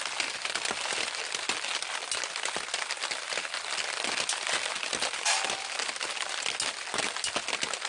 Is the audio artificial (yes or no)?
no